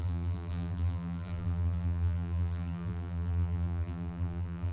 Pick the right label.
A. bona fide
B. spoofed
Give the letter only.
B